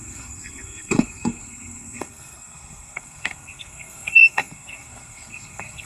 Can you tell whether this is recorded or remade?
remade